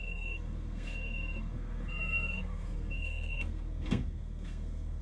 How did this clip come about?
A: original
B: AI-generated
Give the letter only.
B